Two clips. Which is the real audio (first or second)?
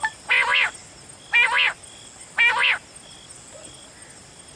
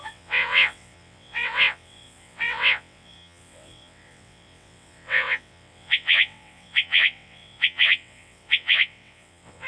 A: first